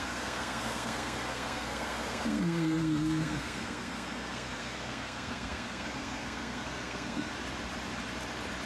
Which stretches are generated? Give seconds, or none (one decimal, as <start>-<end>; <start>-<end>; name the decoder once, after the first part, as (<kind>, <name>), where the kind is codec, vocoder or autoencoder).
0.0-7.3 (codec, SNAC)